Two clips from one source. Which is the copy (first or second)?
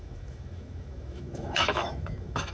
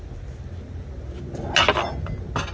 first